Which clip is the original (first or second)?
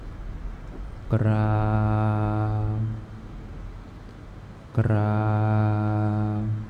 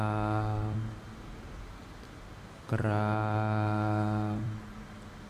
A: first